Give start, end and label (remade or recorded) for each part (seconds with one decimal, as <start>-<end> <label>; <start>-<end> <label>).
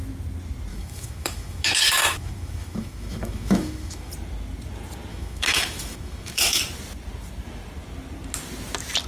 0.0-0.7 recorded; 0.7-4.1 remade; 4.1-5.1 recorded; 5.1-6.6 remade; 6.6-9.1 recorded